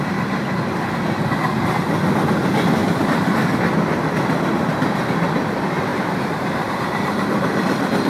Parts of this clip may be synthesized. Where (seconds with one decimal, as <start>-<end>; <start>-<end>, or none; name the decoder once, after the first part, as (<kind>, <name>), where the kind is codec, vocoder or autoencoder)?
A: 2.8-3.6 (vocoder, BigVGAN v2); 5.9-8.1